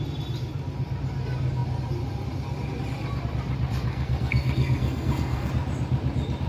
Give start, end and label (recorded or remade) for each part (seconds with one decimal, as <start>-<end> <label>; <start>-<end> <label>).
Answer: 0.0-3.9 recorded; 3.9-5.5 remade; 5.5-6.5 recorded